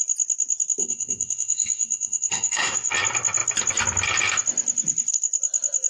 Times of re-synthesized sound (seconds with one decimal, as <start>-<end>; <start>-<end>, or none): 0.8-2.9